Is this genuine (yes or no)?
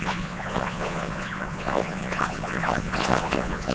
no